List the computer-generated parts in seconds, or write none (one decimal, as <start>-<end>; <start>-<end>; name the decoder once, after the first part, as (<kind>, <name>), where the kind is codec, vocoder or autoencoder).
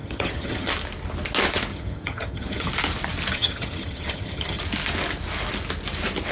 0.0-0.7 (vocoder, HiFi-GAN); 1.7-2.7; 3.3-4.6